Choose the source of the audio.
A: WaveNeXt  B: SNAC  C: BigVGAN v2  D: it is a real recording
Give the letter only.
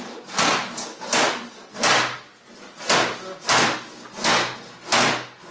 D